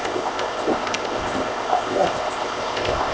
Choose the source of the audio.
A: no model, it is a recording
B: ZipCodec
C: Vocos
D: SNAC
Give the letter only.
B